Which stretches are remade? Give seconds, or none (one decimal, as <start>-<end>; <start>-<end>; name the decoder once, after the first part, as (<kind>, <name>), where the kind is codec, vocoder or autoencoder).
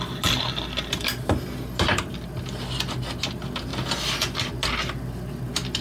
none